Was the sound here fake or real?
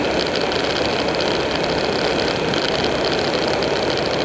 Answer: real